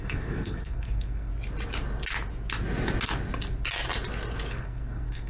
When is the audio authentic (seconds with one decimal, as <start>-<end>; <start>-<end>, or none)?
1.3-4.5